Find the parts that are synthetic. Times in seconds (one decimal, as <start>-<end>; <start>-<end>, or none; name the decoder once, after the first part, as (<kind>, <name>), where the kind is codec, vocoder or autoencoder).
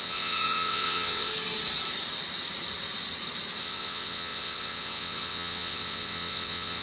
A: 0.0-1.3 (vocoder, WaveNeXt); 3.6-6.8